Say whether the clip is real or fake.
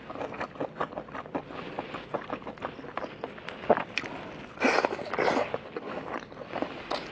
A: real